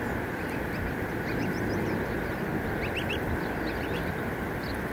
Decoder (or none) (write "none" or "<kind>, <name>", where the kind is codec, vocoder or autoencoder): none